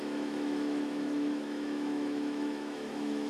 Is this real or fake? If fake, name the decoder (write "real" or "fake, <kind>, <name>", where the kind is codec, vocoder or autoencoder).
fake, autoencoder, DAC-VAE